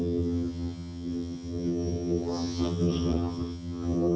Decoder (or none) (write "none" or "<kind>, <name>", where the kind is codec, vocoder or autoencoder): vocoder, HiFi-GAN